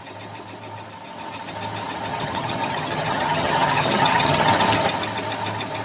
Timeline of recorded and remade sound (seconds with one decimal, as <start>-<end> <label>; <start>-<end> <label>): 0.0-2.1 recorded; 2.1-4.5 remade; 4.5-5.8 recorded